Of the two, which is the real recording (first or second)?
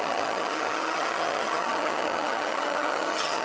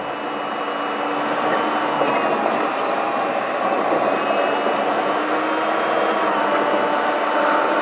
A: second